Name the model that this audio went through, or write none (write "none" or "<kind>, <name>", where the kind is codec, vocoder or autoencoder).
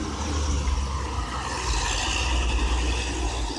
none